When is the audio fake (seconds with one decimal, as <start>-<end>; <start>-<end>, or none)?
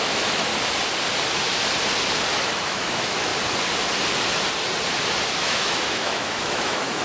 0.0-0.5; 2.4-3.3; 5.4-7.0